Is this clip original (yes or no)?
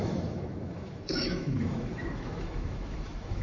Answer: no